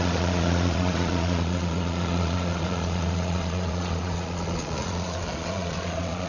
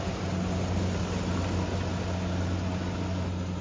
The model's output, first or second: first